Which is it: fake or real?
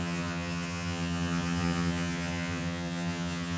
fake